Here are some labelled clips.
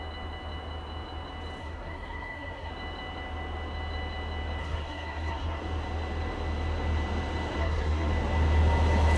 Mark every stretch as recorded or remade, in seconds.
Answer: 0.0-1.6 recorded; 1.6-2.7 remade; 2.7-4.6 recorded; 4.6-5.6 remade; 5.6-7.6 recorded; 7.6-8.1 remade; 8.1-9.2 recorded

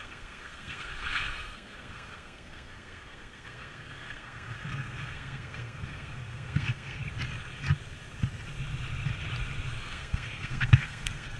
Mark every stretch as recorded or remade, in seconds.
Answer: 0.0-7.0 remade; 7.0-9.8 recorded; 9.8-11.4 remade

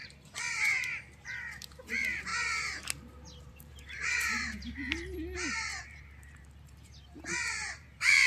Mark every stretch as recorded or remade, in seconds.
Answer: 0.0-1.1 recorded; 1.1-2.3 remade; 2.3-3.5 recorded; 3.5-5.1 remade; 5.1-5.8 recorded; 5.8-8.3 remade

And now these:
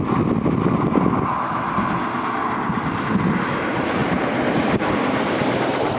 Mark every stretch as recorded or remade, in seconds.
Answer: 0.0-2.4 recorded; 2.4-3.0 remade; 3.0-4.0 recorded; 4.0-4.8 remade; 4.8-6.0 recorded

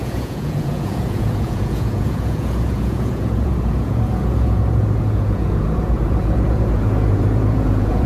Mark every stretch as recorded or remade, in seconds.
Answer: 0.0-8.1 remade

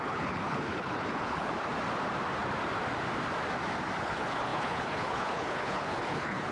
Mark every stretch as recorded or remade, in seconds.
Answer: 0.0-1.5 remade; 1.5-4.0 recorded; 4.0-6.5 remade

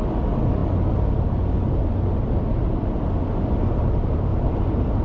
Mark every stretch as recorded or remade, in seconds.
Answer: 0.0-4.3 recorded; 4.3-5.0 remade

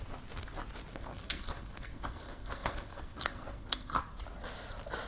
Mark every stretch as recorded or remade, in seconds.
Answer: 0.0-0.9 recorded; 0.9-4.0 remade; 4.0-5.1 recorded